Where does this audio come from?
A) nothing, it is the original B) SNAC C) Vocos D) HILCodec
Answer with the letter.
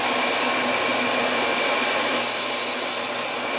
A